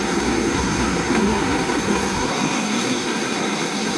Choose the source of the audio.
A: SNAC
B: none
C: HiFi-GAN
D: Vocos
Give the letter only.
A